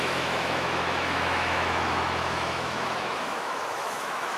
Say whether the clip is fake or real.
fake